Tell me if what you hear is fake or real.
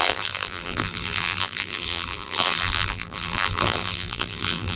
fake